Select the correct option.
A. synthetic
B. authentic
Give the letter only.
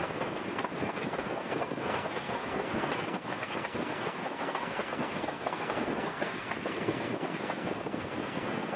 A